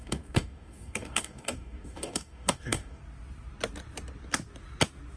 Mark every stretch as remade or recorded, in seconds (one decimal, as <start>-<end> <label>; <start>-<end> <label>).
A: 0.0-3.0 remade; 3.0-5.2 recorded